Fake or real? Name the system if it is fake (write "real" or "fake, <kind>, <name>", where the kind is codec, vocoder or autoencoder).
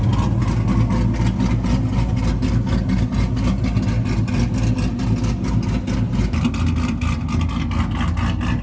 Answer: real